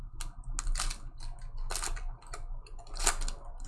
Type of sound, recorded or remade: recorded